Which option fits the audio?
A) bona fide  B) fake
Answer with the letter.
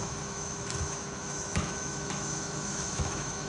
B